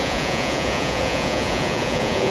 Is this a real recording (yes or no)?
no